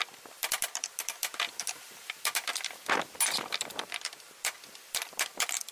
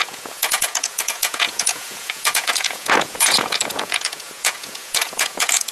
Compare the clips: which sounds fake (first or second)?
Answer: second